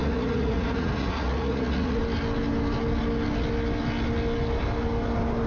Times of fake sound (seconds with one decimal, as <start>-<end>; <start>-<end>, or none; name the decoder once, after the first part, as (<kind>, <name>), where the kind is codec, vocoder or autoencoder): 0.0-2.0 (vocoder, Vocos)